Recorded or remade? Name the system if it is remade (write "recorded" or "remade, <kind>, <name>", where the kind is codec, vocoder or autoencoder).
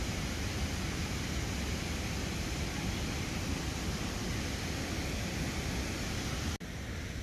recorded